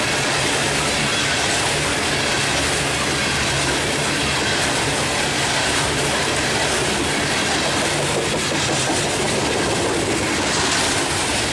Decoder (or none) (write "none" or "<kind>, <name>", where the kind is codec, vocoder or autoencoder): none